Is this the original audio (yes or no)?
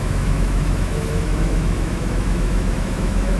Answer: no